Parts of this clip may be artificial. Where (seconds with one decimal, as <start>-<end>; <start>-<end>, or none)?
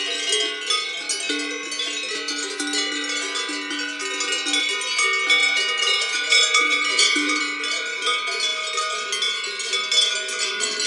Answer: 5.4-7.4